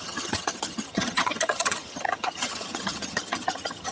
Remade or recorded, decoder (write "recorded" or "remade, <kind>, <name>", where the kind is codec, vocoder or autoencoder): remade, vocoder, HiFi-GAN